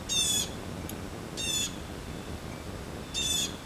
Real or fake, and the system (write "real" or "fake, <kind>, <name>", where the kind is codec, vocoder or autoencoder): real